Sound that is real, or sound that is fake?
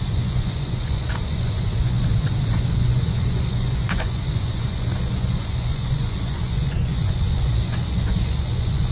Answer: fake